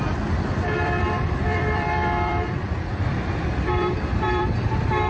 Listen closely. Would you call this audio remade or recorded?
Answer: remade